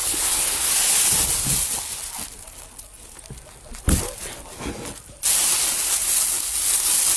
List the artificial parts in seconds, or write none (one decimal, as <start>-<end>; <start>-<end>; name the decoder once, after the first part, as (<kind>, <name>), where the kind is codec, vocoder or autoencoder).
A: 0.0-0.7 (codec, HILCodec)